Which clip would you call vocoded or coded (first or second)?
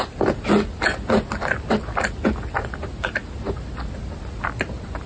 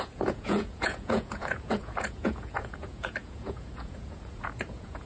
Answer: second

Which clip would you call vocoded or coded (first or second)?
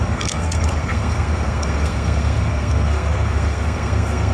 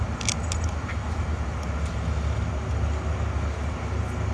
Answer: first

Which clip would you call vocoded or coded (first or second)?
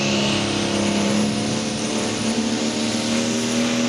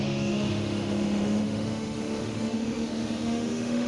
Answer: second